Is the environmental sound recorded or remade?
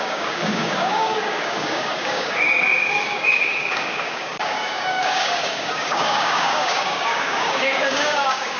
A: remade